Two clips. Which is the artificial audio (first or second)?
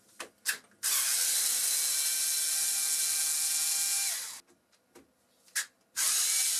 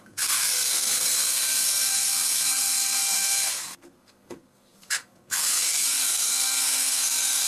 second